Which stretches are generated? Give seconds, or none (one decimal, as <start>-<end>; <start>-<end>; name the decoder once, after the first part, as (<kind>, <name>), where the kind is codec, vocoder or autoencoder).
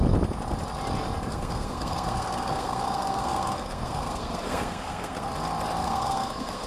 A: 1.3-5.3 (codec, SNAC); 5.8-6.7